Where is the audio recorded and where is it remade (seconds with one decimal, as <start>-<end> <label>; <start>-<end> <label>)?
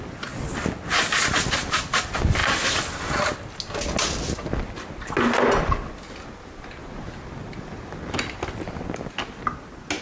0.0-10.0 recorded